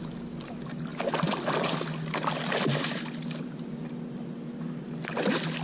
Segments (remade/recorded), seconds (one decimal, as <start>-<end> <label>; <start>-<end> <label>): 0.0-5.6 recorded